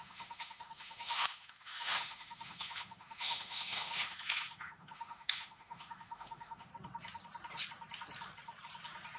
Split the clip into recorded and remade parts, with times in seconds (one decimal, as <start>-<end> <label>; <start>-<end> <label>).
0.0-6.7 remade; 6.7-9.2 recorded